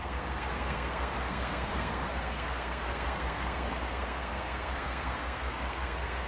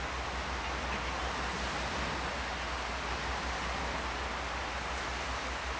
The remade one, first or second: first